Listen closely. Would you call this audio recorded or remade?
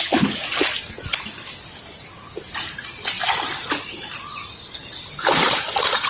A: recorded